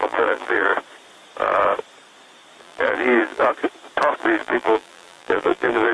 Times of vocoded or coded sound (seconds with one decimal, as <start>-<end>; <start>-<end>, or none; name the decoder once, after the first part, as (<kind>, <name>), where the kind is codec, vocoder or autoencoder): 0.0-0.7 (vocoder, BigVGAN v2); 2.6-3.4; 4.2-5.9